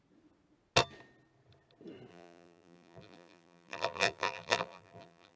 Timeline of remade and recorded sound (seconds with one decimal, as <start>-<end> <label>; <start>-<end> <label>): 0.0-2.1 recorded; 2.1-5.4 remade